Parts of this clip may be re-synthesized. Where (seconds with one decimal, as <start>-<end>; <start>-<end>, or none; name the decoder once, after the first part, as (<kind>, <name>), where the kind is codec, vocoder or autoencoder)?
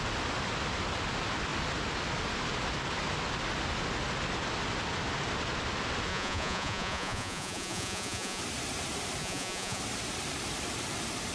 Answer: 6.1-8.4 (vocoder, Vocos); 9.2-9.8